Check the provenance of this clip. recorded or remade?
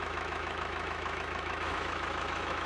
remade